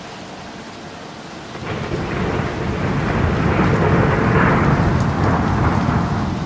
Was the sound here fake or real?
real